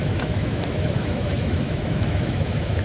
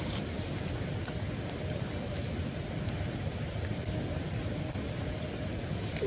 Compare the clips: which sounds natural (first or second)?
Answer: second